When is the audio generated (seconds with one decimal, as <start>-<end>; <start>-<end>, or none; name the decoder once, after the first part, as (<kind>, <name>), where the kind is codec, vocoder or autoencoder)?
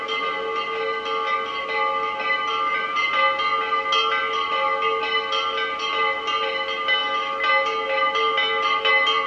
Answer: none